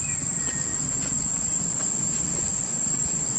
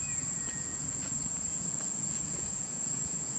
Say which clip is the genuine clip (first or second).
first